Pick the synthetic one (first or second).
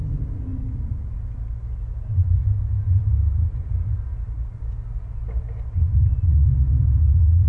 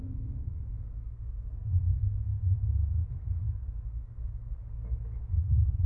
second